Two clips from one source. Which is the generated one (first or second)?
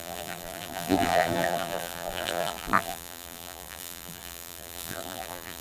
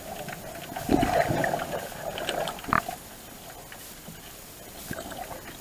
first